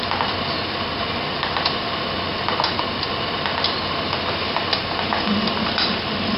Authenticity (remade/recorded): recorded